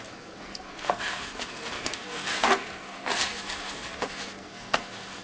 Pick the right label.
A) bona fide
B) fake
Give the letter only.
B